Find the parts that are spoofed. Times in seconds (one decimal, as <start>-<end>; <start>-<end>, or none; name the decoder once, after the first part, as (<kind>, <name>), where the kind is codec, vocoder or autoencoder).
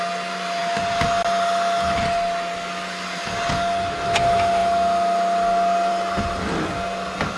none